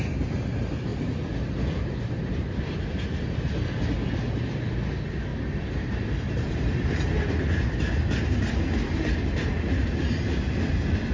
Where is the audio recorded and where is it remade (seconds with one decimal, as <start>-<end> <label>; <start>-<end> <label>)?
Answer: 0.0-0.9 recorded; 0.9-2.6 remade; 2.6-5.3 recorded; 5.3-9.9 remade; 9.9-11.1 recorded